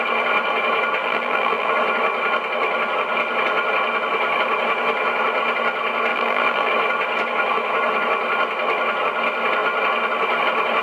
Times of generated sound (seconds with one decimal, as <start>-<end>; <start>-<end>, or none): 1.0-1.7; 6.1-6.7